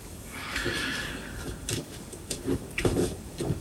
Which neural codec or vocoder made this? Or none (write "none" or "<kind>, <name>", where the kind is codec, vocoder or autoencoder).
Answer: codec, DAC